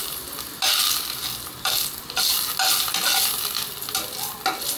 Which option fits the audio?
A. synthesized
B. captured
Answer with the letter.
B